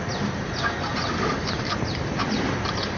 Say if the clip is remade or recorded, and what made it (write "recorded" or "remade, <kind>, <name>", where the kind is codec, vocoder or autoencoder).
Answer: recorded